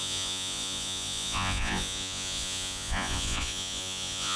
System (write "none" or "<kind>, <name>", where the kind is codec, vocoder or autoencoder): vocoder, Vocos